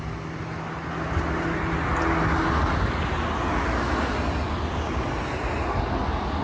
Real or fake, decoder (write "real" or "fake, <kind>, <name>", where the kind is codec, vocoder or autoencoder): real